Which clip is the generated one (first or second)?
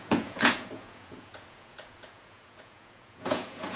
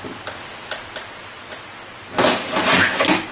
first